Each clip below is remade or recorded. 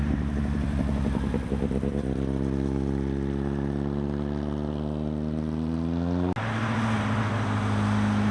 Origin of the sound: recorded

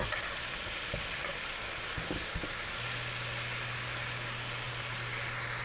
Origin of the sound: recorded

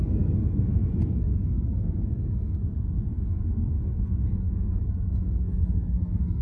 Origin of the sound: remade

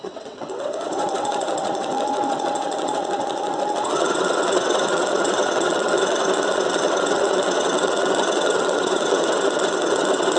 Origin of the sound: remade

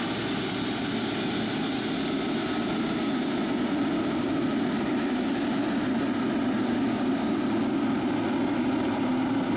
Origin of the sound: recorded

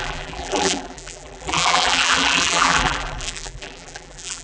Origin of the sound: remade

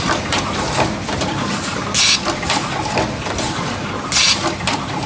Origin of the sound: recorded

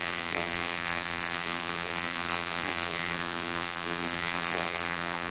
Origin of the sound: remade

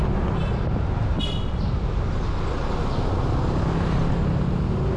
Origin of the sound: recorded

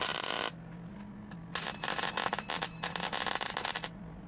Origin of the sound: recorded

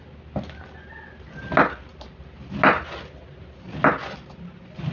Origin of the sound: recorded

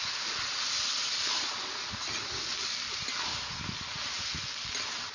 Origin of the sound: recorded